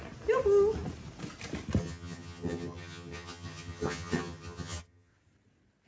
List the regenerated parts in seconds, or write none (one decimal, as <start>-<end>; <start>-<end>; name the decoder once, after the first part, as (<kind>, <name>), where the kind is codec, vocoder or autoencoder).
1.8-5.1 (vocoder, HiFi-GAN)